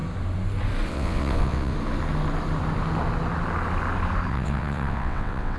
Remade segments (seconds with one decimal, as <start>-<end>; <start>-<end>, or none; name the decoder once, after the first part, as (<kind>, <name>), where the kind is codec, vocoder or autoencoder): 0.9-1.7 (vocoder, WaveNeXt); 4.3-5.6